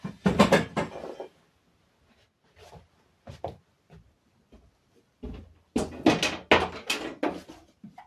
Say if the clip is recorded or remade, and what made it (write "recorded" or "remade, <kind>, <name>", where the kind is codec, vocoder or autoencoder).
recorded